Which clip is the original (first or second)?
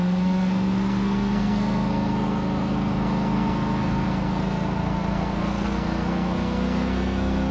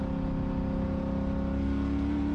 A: second